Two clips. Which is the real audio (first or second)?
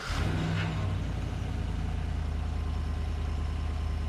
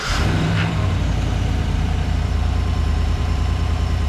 first